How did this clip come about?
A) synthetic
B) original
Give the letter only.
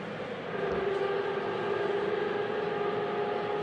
B